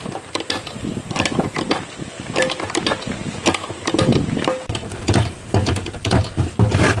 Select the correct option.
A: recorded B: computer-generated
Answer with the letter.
A